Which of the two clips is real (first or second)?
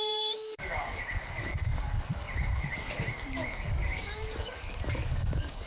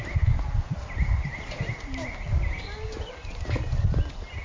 second